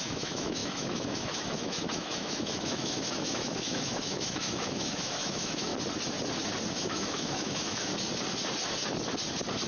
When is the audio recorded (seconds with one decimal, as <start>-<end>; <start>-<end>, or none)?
5.7-6.7; 7.9-9.7